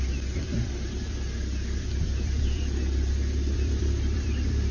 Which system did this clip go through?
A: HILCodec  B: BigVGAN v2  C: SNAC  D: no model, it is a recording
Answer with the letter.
B